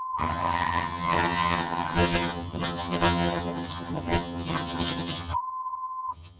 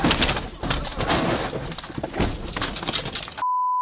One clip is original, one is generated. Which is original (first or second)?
second